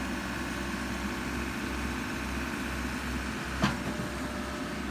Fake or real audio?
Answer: real